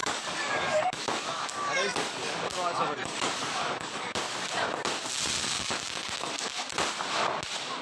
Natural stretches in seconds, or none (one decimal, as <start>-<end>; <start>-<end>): 4.7-5.4; 6.5-7.8